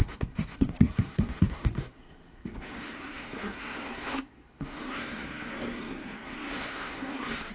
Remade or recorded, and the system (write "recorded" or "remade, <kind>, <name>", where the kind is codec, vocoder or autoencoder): remade, codec, SNAC